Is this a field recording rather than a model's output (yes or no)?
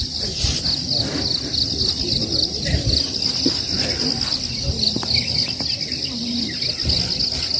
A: yes